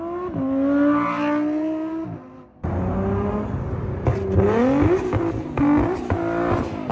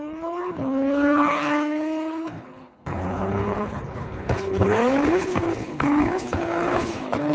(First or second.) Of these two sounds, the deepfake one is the second